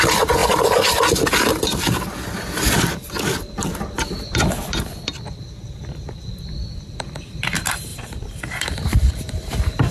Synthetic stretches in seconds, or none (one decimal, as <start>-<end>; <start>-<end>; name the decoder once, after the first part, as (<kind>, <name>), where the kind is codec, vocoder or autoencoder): 7.9-9.9 (vocoder, BigVGAN v2)